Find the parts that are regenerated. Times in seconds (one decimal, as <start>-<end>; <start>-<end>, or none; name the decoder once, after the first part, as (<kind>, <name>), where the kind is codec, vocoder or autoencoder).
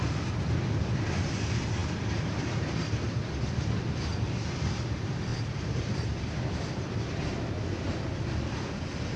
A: 1.8-3.1 (vocoder, BigVGAN v2); 4.1-4.8; 5.3-7.2